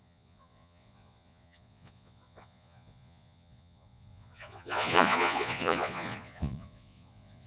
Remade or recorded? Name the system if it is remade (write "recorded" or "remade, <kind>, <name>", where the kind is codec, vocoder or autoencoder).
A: remade, vocoder, Vocos